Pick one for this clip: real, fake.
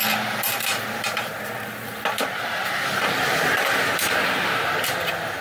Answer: fake